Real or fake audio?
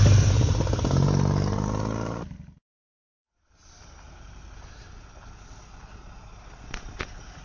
real